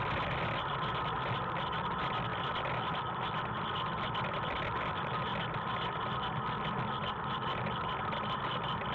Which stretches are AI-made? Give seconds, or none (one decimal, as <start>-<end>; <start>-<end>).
none